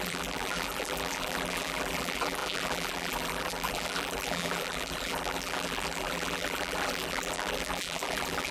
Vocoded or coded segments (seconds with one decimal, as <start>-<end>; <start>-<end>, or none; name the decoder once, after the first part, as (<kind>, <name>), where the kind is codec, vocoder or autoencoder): 0.0-8.5 (vocoder, BigVGAN v2)